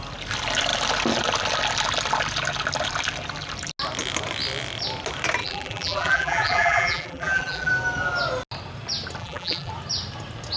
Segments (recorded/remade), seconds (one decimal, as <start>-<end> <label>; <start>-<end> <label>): 0.0-5.4 recorded; 5.4-7.7 remade; 7.7-9.2 recorded; 9.2-9.7 remade; 9.7-10.6 recorded